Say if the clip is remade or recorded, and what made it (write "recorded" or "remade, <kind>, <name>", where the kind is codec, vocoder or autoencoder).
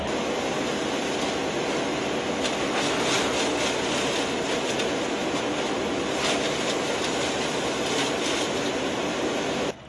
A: recorded